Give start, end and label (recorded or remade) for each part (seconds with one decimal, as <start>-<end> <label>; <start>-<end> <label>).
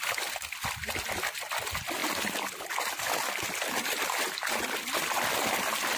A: 0.0-6.0 recorded